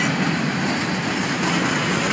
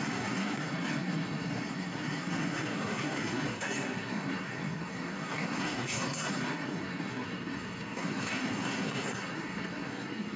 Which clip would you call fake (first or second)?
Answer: second